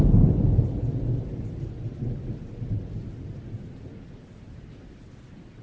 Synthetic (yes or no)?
no